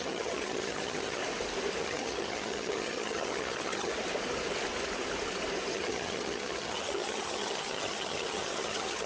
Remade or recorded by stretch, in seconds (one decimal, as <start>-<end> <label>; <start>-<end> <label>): 0.0-1.2 remade; 1.2-1.8 recorded; 1.8-3.9 remade; 3.9-5.7 recorded; 5.7-9.1 remade